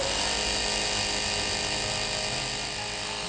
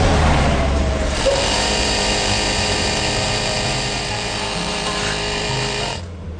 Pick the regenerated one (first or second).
second